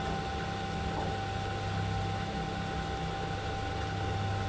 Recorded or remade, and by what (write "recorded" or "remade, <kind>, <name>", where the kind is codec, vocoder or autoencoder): recorded